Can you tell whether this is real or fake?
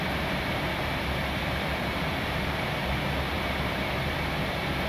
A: real